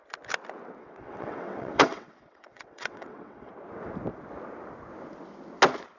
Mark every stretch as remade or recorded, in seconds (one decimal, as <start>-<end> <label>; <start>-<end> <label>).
0.0-0.8 recorded; 0.8-3.5 remade; 3.5-6.0 recorded